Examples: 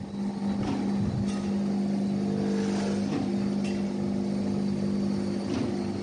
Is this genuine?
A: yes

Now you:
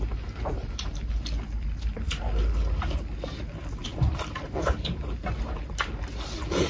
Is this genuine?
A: yes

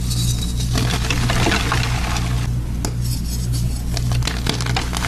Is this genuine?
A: yes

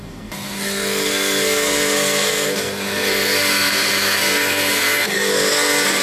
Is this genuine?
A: no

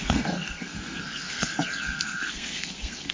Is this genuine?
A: no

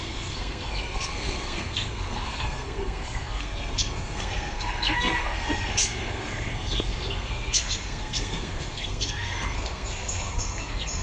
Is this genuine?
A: no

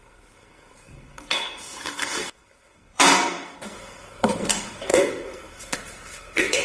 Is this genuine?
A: no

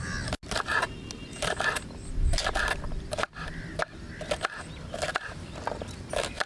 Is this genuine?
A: yes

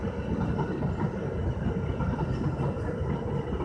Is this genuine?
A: yes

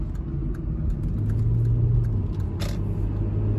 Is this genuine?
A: yes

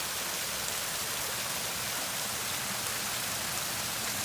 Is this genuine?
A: yes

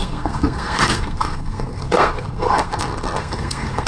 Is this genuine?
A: no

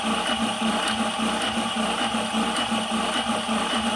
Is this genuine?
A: yes